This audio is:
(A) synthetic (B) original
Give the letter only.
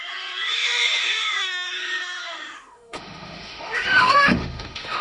A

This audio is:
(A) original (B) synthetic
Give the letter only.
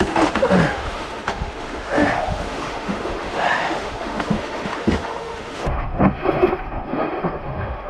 B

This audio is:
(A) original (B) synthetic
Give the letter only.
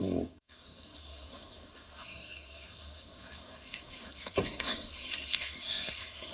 B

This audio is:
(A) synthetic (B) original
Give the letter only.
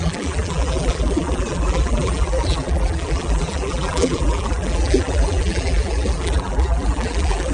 A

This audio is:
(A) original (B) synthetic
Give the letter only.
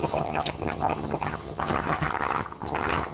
B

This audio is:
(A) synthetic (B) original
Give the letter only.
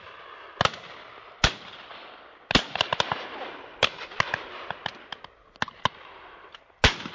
B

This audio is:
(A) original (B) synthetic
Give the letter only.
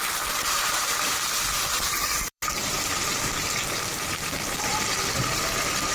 B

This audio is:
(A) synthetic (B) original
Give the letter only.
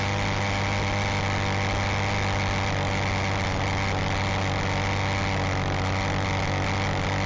B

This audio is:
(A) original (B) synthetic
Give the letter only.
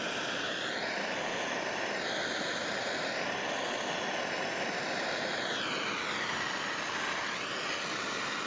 A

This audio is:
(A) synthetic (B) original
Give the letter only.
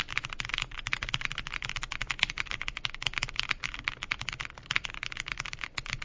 B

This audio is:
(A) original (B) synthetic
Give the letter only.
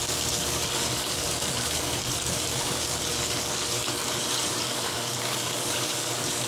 B